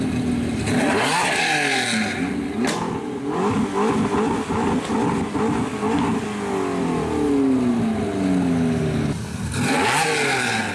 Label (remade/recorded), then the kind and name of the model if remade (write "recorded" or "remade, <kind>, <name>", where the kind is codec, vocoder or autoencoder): recorded